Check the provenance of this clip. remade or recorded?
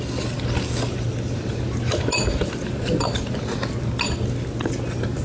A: recorded